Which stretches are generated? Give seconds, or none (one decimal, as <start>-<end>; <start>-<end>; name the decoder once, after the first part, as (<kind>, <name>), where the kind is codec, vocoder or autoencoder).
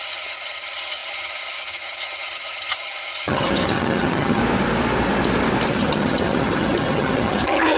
0.0-4.4 (vocoder, HiFi-GAN); 5.7-7.8